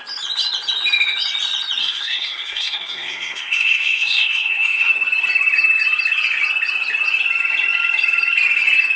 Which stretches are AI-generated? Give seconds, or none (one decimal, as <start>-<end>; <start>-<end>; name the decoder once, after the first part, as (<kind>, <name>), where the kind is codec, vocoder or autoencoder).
1.8-4.9 (codec, SNAC)